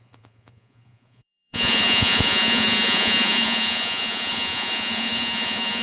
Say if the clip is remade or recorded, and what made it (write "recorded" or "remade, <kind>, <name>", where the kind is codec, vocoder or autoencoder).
remade, vocoder, Vocos